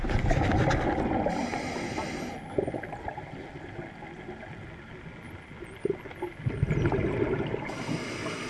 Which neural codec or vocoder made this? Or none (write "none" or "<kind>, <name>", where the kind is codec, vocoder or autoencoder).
none